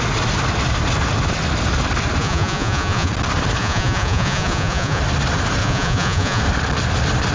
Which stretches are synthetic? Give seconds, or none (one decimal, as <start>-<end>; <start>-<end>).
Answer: 2.2-3.1; 3.6-5.0; 5.6-6.4